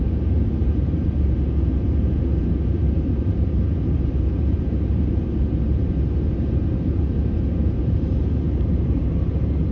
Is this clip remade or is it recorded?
remade